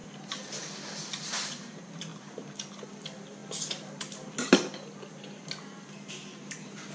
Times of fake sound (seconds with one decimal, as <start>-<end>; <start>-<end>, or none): none